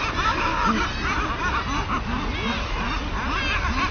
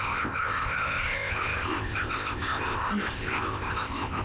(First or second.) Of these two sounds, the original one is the first